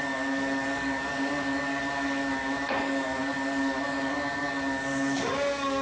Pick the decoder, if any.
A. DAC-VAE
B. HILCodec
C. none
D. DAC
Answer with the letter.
D